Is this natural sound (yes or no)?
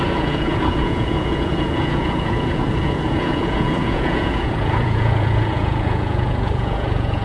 no